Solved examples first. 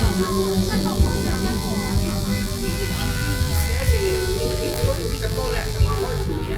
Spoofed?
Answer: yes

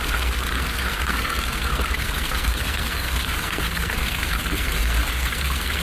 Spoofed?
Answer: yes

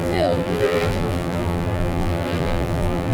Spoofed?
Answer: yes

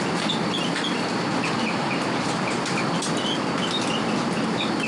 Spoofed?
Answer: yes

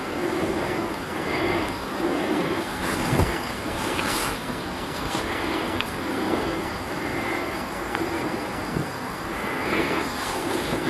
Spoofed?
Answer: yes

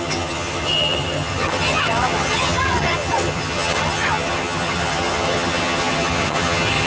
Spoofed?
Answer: yes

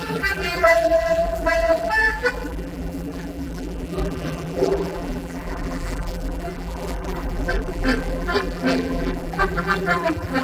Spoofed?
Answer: yes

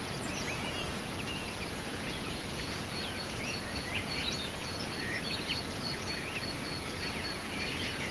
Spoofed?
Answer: yes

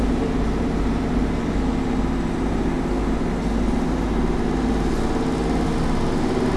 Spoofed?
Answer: no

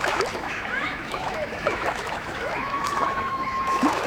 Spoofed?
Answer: yes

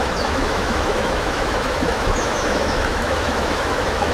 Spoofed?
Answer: yes